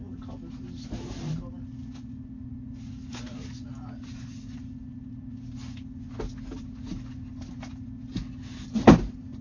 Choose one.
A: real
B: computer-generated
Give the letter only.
A